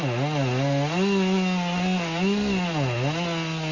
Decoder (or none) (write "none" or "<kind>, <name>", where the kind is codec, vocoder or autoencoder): none